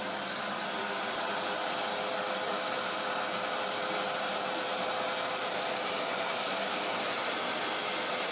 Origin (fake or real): real